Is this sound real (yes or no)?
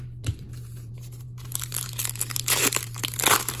no